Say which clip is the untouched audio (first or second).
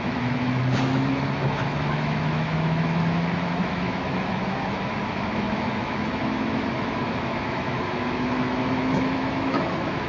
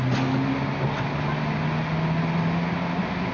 second